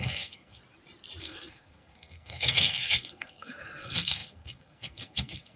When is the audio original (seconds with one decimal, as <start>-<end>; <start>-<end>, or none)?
0.6-1.2